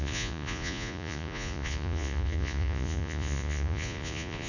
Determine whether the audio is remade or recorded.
remade